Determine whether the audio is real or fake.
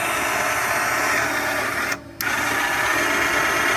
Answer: real